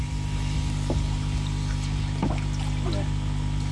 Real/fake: real